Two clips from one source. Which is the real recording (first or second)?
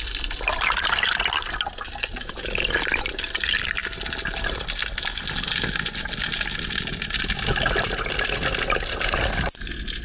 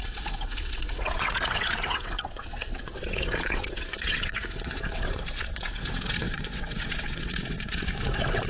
first